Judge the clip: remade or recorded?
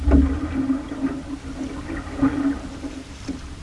recorded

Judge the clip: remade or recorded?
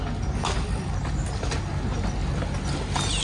recorded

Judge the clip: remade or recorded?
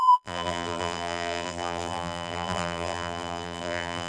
remade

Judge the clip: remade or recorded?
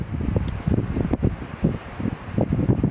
recorded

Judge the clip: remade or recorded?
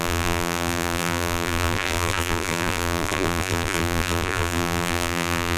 remade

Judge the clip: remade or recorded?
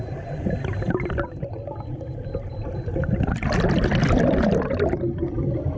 remade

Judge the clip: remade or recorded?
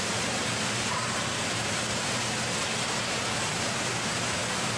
remade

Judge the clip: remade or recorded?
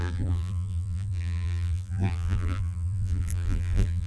remade